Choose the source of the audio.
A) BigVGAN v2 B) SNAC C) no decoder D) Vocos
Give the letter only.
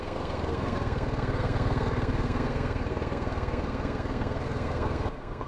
B